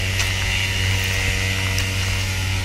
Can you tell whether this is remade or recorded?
recorded